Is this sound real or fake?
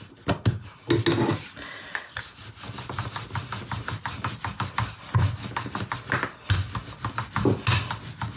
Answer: real